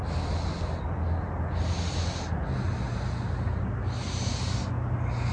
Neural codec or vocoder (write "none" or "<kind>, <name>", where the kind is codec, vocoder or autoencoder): none